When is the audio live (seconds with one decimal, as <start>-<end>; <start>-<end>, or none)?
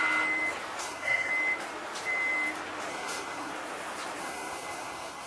0.0-0.8; 1.3-2.9; 3.5-4.2